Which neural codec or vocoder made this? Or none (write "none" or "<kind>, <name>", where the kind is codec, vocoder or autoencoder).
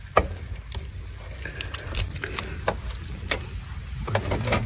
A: none